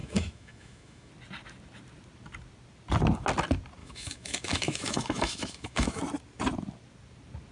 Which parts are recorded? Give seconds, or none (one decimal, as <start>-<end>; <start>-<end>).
1.1-3.8; 6.0-7.5